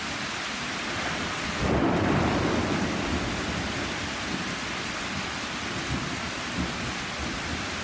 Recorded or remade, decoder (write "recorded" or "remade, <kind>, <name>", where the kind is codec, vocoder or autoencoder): recorded